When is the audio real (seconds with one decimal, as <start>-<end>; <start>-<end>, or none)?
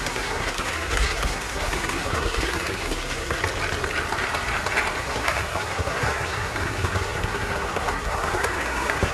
3.4-5.0